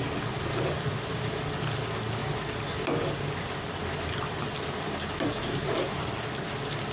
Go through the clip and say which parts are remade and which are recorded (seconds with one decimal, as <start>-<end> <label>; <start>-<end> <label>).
0.0-6.9 recorded